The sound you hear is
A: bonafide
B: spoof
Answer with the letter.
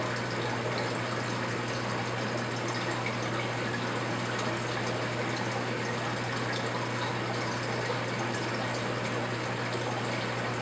A